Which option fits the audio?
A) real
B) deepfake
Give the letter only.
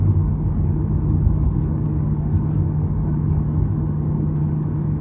B